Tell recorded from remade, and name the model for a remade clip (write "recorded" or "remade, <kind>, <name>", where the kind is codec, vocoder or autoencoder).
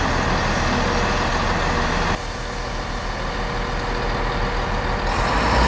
recorded